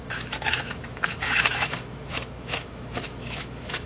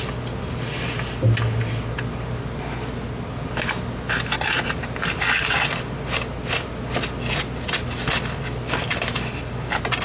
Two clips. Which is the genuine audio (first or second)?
second